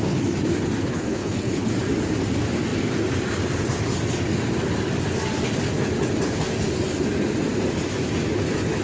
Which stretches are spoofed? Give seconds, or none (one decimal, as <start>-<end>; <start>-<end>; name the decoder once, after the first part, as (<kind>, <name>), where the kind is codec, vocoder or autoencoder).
0.8-1.7 (codec, HILCodec)